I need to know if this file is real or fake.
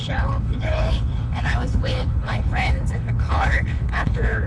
fake